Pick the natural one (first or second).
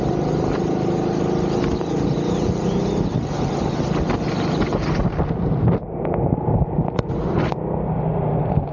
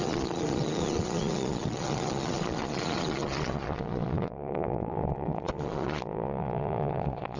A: first